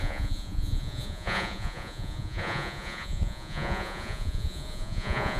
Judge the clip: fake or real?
fake